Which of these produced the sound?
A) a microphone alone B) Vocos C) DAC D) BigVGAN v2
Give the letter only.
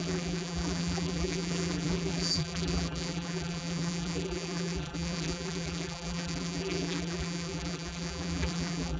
D